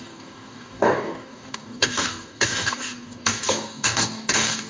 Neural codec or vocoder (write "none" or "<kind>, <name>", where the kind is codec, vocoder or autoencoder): codec, DAC